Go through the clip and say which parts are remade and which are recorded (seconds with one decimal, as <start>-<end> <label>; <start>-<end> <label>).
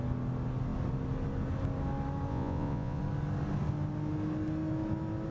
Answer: 0.0-2.3 recorded; 2.3-3.0 remade; 3.0-5.3 recorded